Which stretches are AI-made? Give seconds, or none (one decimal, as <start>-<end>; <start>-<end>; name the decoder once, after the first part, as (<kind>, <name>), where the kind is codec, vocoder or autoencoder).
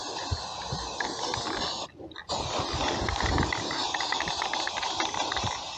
none